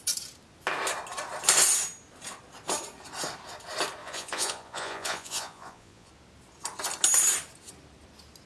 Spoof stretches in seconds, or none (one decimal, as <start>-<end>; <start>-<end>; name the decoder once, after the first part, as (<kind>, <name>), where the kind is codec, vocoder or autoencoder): 4.0-6.1 (vocoder, Vocos)